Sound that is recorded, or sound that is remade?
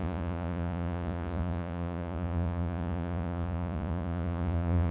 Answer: remade